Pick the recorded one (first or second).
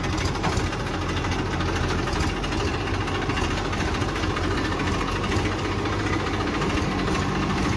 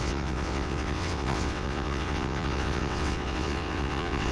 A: first